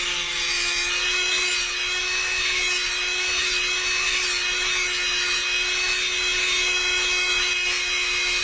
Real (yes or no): no